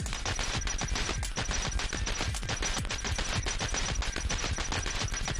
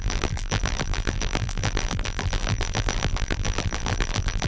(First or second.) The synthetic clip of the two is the second